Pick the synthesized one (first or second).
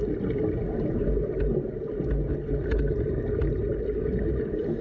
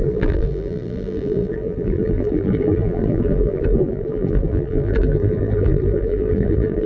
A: second